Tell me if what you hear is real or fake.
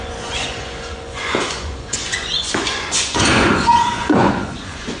fake